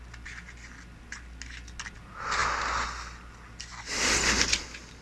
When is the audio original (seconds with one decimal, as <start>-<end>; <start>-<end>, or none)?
0.0-5.0